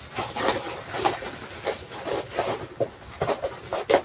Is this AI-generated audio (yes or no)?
no